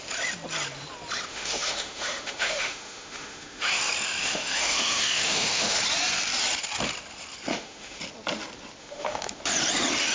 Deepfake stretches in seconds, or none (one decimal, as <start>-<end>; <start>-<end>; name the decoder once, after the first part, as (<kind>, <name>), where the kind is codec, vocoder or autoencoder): 1.3-3.8 (autoencoder, DAC-VAE); 4.2-5.8; 7.5-8.0; 8.8-9.4